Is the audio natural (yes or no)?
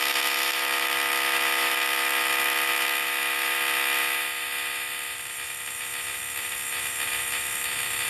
no